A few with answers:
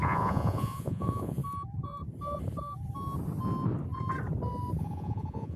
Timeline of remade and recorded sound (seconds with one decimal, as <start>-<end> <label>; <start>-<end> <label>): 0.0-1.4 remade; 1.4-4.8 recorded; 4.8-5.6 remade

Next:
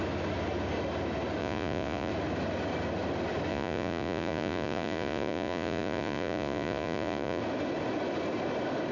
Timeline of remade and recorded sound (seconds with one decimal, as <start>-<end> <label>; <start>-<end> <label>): 0.0-1.4 recorded; 1.4-2.1 remade; 2.1-3.5 recorded; 3.5-7.4 remade; 7.4-8.9 recorded

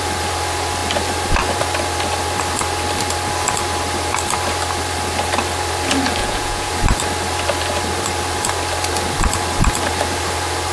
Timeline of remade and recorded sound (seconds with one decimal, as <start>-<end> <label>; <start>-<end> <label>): 0.0-6.2 recorded; 6.2-6.7 remade; 6.7-10.7 recorded

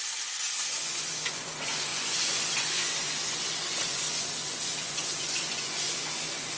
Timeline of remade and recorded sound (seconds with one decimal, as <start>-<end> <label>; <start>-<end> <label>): 0.0-6.6 remade

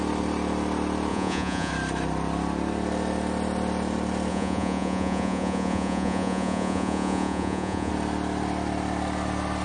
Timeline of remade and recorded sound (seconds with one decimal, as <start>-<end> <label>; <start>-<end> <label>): 0.0-1.1 recorded; 1.1-1.7 remade; 1.7-4.3 recorded; 4.3-7.9 remade; 7.9-9.6 recorded